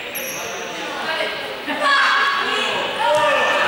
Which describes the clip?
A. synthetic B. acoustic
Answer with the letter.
B